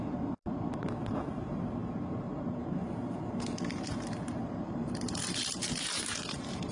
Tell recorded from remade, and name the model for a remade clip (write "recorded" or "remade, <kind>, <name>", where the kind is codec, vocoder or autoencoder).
remade, vocoder, BigVGAN v2